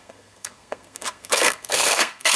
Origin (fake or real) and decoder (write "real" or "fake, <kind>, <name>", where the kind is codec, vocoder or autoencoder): fake, codec, SNAC